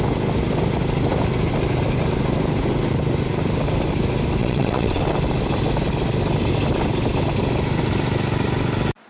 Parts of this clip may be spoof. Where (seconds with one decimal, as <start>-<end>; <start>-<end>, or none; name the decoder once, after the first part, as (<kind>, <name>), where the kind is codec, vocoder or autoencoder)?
4.4-5.0 (vocoder, WaveNeXt)